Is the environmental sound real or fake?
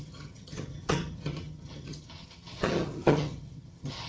fake